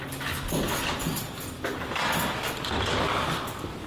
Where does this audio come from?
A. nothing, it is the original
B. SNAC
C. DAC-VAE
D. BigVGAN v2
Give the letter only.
A